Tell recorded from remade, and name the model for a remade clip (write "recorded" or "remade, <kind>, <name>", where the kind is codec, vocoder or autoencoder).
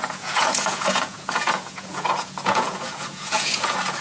remade, vocoder, Vocos